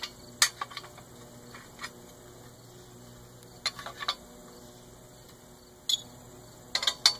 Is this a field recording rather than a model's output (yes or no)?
yes